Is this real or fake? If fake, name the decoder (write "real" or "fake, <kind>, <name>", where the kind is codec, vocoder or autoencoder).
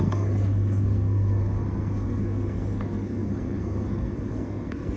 fake, codec, SNAC